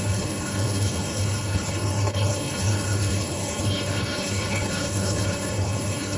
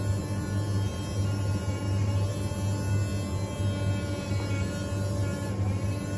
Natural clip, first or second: second